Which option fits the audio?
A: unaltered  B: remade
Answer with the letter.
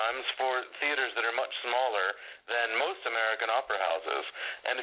A